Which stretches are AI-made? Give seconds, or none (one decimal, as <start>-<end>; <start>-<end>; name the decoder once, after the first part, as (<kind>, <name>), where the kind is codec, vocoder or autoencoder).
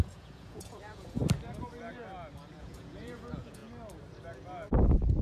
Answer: 0.0-1.2 (vocoder, Vocos); 2.6-3.6